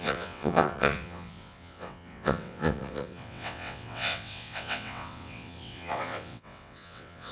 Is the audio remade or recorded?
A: remade